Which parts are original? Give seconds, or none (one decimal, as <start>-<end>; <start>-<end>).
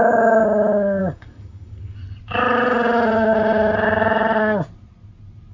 0.4-1.0; 2.0-5.5